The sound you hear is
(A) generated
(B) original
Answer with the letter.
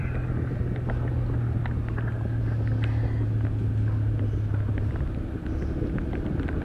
B